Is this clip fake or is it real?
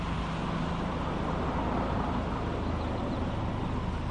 real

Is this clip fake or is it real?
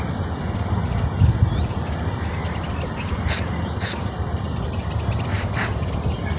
fake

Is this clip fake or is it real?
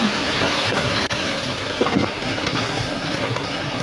fake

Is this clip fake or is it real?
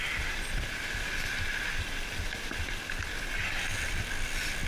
real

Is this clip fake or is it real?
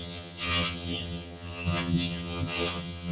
fake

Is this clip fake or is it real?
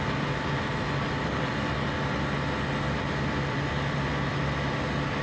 real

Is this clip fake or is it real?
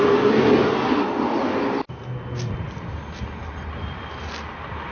real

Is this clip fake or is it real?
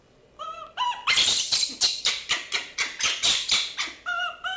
fake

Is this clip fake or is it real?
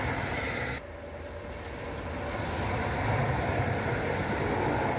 real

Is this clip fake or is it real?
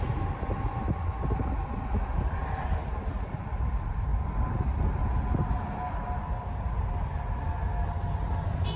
real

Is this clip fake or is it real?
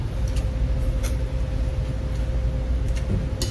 real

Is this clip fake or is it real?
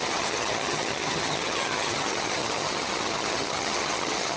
fake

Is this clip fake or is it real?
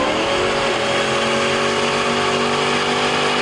real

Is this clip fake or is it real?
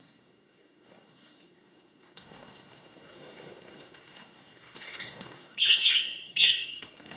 fake